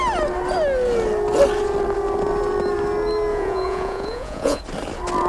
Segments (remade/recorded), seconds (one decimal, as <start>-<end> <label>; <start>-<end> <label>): 0.0-3.3 recorded; 3.3-4.6 remade; 4.6-5.3 recorded